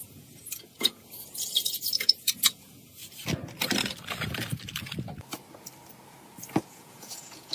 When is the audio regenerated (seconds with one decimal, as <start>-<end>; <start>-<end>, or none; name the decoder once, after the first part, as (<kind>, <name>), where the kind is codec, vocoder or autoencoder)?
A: 0.0-3.0 (vocoder, Vocos); 6.7-7.5